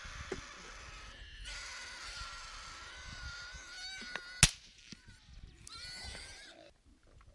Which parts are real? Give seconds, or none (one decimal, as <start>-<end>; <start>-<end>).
0.0-7.3